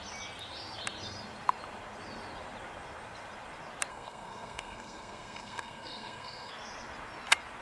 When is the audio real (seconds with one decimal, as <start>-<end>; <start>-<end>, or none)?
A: 0.0-3.9; 6.5-7.6